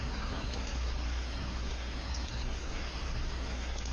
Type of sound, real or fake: fake